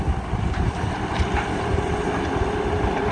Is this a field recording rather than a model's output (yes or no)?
yes